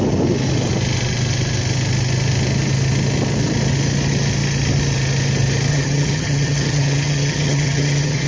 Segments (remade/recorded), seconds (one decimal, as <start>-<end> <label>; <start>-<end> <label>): 0.0-5.7 recorded; 5.7-8.3 remade